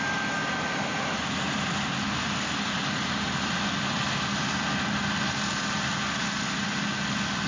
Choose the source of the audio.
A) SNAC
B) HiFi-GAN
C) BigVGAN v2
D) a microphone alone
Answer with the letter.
D